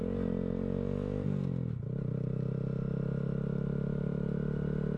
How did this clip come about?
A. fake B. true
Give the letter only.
B